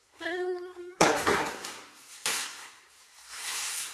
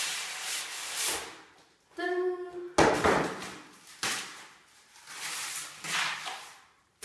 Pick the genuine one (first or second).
second